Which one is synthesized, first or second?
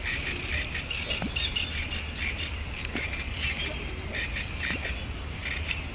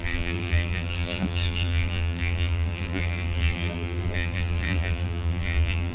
second